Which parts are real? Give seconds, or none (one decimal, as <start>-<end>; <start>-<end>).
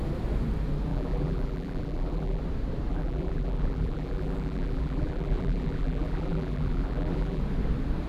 0.0-0.9; 2.4-2.9; 7.4-8.1